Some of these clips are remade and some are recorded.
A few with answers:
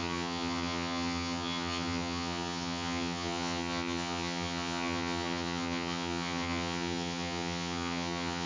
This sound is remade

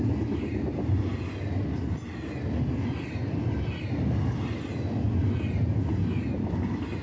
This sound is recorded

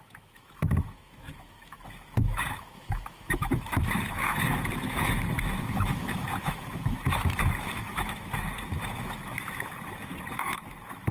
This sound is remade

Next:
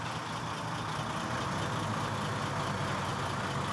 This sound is recorded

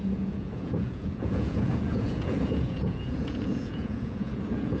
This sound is remade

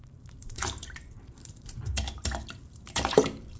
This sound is remade